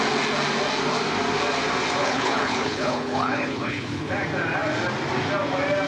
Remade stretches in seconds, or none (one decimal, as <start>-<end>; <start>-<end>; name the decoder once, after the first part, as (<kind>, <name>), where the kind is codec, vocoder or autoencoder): 2.0-4.1 (codec, HILCodec)

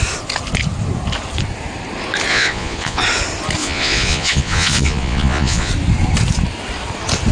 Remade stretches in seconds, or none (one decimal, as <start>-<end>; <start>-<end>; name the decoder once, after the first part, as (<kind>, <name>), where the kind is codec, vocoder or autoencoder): 2.3-3.0 (vocoder, Vocos); 3.6-5.7

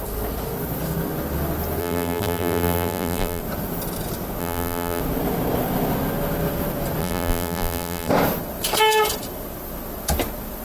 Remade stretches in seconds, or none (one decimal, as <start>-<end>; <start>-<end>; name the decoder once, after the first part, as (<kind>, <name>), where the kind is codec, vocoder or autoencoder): 1.8-3.4 (vocoder, BigVGAN v2); 4.4-5.0; 7.0-8.1